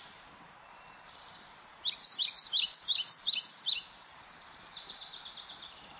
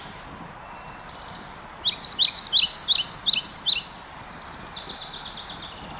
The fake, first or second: first